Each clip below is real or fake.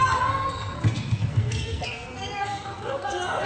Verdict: fake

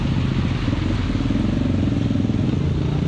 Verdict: real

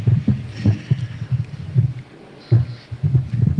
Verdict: real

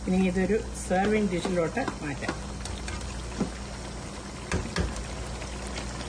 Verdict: real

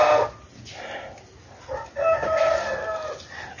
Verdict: real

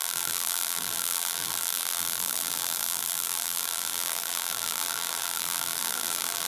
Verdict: fake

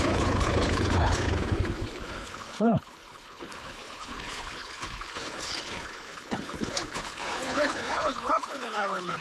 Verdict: fake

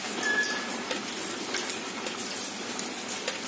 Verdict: real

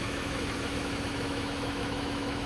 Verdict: fake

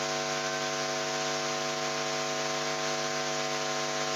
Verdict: real